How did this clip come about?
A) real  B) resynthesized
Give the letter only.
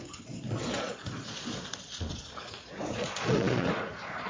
B